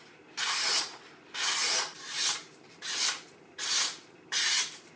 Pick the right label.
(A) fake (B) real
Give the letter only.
A